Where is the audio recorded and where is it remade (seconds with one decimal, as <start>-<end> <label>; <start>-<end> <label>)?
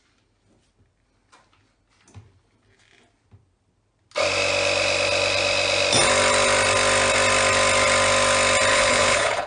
0.0-8.7 recorded; 8.7-9.5 remade